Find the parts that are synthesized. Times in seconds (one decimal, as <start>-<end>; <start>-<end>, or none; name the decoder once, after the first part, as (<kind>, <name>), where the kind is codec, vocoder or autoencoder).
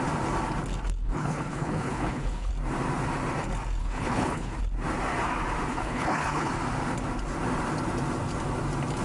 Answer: 1.0-2.5 (codec, HILCodec); 3.8-4.6; 5.7-6.5